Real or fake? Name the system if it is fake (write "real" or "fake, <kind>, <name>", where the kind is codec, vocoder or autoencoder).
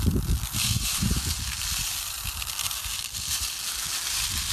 real